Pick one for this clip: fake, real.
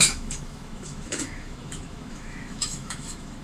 fake